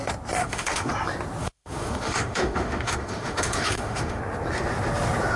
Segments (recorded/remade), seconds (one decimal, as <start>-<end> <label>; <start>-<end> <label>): 0.0-0.4 recorded; 0.4-0.9 remade; 0.9-1.4 recorded; 1.4-4.2 remade; 4.2-5.4 recorded